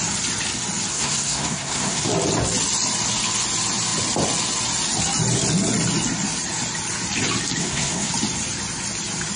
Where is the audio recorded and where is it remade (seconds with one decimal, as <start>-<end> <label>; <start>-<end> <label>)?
0.0-0.9 recorded; 0.9-2.1 remade; 2.1-7.6 recorded; 7.6-8.1 remade; 8.1-9.4 recorded